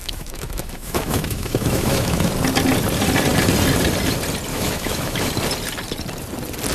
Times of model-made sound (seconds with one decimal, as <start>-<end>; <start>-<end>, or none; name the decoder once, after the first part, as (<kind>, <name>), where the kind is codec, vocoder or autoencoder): 0.0-2.3 (autoencoder, DAC-VAE); 4.5-5.3